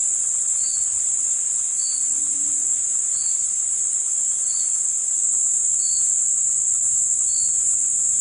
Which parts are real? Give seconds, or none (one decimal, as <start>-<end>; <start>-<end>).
0.0-8.2

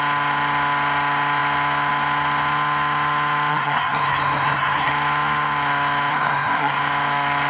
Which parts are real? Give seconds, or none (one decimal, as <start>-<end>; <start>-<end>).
0.0-3.5; 4.9-6.1; 6.8-7.5

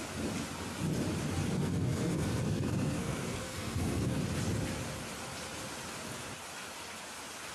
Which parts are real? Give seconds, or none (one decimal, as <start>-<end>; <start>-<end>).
0.0-1.6; 4.2-7.5

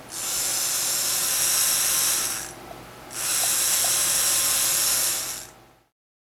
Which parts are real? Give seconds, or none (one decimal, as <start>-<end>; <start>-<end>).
0.0-6.3

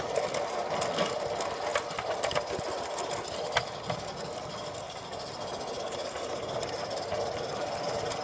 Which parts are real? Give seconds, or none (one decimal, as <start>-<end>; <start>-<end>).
0.0-8.2